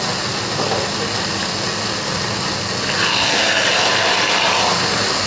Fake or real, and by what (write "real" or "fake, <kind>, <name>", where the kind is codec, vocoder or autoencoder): real